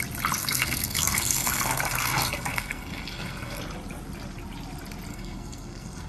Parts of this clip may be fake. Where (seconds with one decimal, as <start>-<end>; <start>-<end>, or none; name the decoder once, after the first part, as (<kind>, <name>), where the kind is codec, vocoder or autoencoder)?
0.4-3.6 (codec, SNAC); 5.1-6.1